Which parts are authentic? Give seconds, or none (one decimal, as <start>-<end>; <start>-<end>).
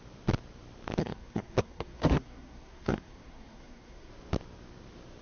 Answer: 0.0-1.0; 4.1-5.2